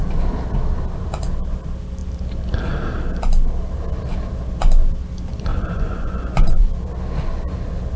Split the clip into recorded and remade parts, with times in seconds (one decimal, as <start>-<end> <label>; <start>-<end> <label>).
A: 0.0-5.5 recorded; 5.5-6.7 remade; 6.7-8.0 recorded